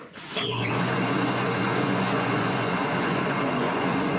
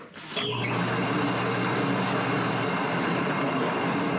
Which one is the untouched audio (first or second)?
second